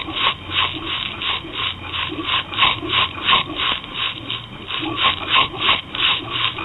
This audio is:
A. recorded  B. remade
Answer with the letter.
A